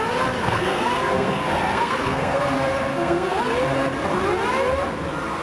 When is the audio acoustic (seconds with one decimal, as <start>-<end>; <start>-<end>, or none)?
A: 0.0-0.4; 2.4-2.9; 3.4-5.4